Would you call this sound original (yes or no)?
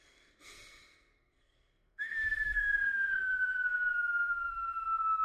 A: no